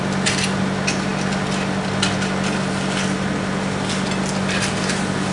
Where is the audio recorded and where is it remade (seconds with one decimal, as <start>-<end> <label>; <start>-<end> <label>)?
0.0-5.3 recorded